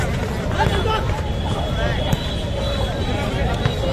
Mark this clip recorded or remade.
recorded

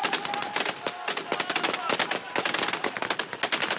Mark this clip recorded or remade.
recorded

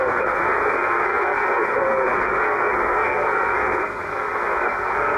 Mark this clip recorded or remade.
remade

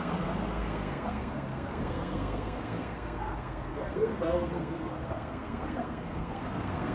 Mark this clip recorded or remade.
remade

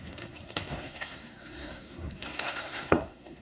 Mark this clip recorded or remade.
remade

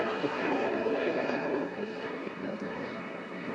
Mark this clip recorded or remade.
remade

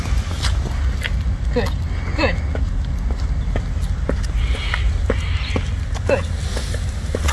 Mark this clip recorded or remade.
recorded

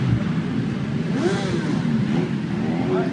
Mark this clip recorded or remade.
recorded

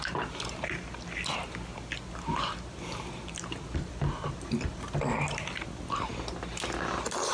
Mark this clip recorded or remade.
recorded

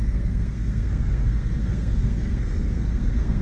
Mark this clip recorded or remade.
remade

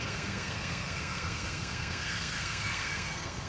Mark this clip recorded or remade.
remade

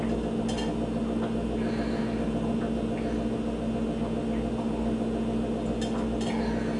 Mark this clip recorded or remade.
recorded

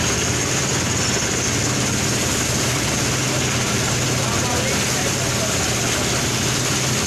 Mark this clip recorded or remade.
recorded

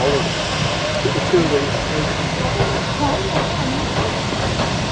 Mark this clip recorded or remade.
recorded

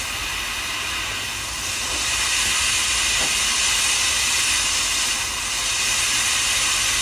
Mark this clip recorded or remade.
recorded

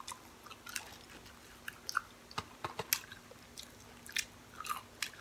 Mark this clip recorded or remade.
recorded